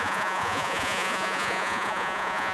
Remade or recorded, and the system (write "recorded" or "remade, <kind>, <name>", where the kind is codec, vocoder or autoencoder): remade, vocoder, Vocos